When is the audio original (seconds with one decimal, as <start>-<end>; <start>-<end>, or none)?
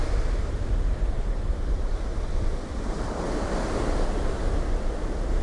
0.0-2.1